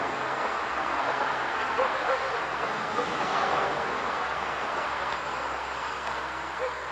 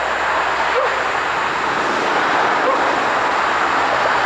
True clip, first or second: second